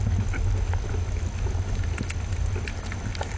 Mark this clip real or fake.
real